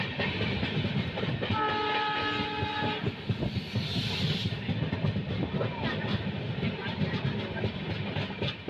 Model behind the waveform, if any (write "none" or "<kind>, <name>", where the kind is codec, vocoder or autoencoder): none